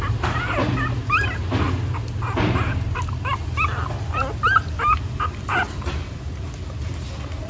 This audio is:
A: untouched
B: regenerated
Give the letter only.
A